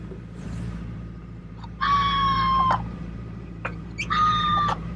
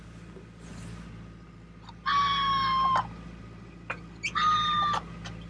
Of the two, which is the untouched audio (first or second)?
second